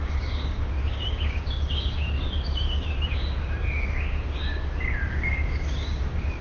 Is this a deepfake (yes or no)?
yes